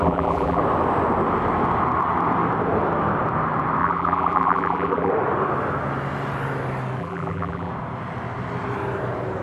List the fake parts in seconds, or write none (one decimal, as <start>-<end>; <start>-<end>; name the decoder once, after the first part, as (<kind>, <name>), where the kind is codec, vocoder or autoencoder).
0.0-0.6 (vocoder, BigVGAN v2); 3.8-5.1; 7.0-7.7